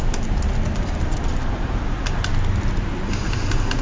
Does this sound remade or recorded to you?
recorded